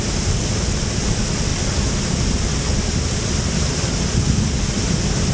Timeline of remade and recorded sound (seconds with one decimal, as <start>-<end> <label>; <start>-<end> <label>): 0.0-5.3 recorded